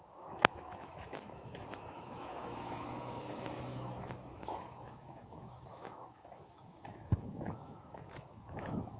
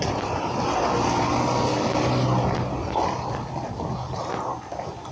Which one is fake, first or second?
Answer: first